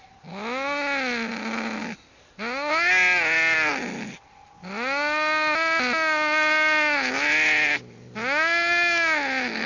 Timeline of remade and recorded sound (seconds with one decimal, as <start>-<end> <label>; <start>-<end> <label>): 0.0-9.7 recorded

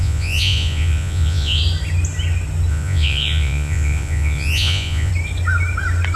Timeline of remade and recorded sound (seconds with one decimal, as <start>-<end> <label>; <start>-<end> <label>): 0.0-1.6 remade; 1.6-2.7 recorded; 2.7-5.1 remade; 5.1-6.2 recorded

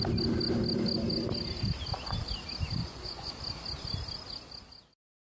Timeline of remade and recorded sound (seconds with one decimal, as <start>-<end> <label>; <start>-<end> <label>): 0.0-2.8 recorded; 2.8-3.3 remade; 3.3-5.3 recorded

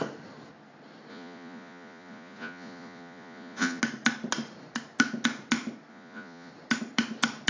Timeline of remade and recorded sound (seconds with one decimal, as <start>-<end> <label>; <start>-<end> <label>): 0.0-1.1 recorded; 1.1-3.8 remade; 3.8-5.9 recorded; 5.9-6.5 remade; 6.5-7.5 recorded

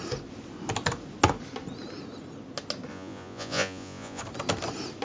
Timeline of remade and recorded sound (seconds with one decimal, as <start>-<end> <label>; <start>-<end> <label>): 0.0-2.9 recorded; 2.9-4.2 remade; 4.2-5.0 recorded

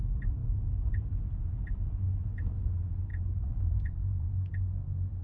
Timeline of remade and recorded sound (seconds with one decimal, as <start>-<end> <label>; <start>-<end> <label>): 0.0-3.1 recorded; 3.1-4.3 remade; 4.3-5.2 recorded